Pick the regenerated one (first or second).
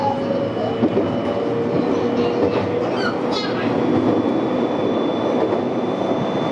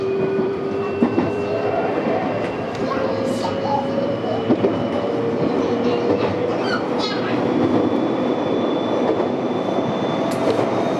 second